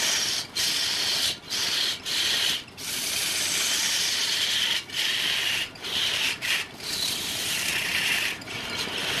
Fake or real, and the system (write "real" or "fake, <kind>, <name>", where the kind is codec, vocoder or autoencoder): fake, vocoder, BigVGAN v2